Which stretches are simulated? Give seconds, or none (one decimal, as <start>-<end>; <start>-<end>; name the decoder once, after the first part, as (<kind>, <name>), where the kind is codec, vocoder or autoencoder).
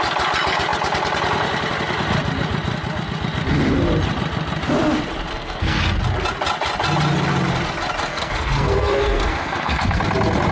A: 5.3-5.8 (codec, SNAC); 8.1-10.0